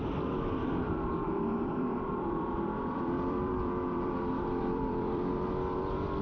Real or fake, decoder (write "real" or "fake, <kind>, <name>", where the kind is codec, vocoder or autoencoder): fake, vocoder, BigVGAN v2